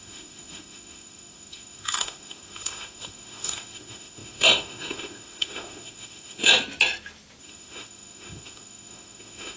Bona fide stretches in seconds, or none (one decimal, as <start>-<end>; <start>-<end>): 6.5-7.4